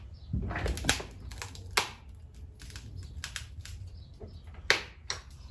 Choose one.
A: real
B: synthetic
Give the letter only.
A